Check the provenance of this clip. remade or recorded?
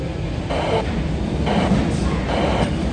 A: recorded